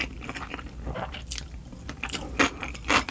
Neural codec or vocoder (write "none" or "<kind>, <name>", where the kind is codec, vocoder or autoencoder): none